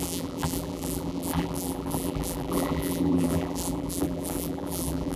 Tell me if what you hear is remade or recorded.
remade